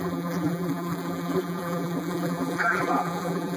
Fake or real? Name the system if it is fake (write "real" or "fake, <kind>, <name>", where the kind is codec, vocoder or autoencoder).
fake, vocoder, BigVGAN v2